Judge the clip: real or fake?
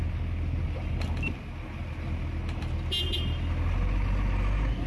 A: real